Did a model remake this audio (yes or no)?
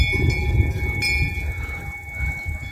no